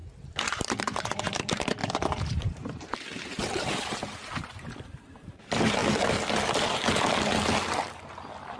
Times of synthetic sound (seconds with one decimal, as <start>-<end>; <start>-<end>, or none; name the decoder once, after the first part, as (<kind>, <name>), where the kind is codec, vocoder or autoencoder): 0.0-5.8 (vocoder, BigVGAN v2)

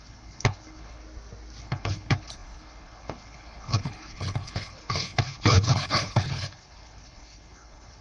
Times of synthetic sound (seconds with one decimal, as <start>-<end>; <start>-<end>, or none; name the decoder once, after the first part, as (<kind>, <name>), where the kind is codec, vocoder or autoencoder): 0.0-1.0 (codec, HILCodec); 1.6-8.0